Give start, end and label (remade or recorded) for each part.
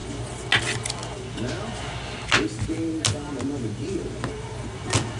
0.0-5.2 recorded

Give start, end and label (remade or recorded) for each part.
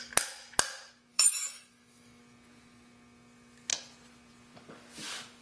0.0-1.1 recorded; 1.1-2.2 remade; 2.2-5.4 recorded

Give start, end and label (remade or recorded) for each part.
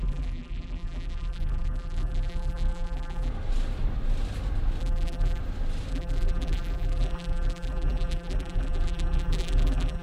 0.0-3.3 remade; 3.3-4.8 recorded; 4.8-5.4 remade; 5.4-5.9 recorded; 5.9-10.0 remade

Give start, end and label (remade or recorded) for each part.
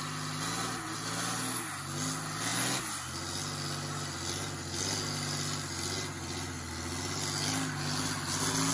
0.0-8.7 recorded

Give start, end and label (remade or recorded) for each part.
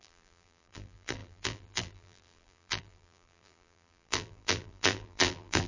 0.0-5.7 remade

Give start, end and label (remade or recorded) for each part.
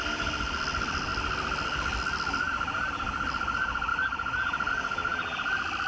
0.0-1.1 remade; 1.1-2.9 recorded; 2.9-3.9 remade; 3.9-4.7 recorded; 4.7-5.9 remade